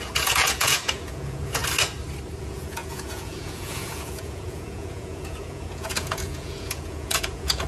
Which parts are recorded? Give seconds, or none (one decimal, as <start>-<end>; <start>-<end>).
1.6-2.4

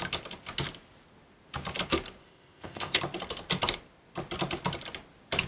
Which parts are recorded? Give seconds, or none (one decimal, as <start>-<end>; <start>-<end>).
0.0-2.2; 3.0-5.5

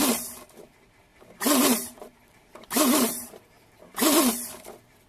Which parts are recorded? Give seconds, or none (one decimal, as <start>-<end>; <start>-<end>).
0.0-1.1; 4.2-5.1

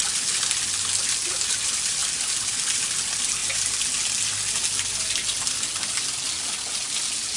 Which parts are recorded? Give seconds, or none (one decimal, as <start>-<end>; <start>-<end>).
0.0-7.4

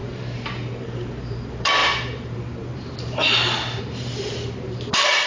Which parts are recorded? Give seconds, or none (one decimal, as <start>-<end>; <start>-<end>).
none